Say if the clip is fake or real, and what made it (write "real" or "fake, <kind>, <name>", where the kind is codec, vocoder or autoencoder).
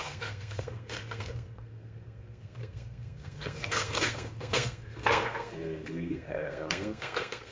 fake, codec, SNAC